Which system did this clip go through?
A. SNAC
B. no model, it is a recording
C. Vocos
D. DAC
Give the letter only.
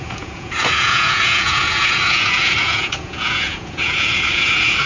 C